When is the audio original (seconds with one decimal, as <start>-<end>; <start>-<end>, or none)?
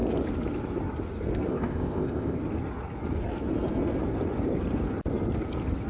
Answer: 0.0-1.5; 2.4-5.9